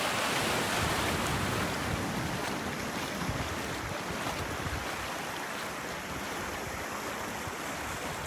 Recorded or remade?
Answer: recorded